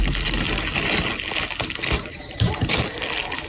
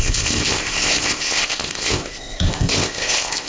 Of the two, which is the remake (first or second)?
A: second